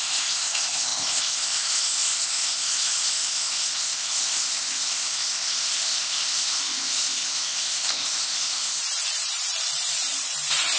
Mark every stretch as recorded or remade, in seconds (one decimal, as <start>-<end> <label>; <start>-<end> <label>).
0.0-8.8 remade; 8.8-10.8 recorded